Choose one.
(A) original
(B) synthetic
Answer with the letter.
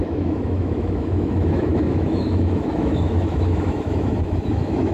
B